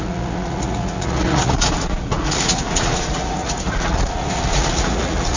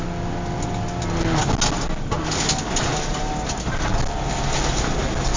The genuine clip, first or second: second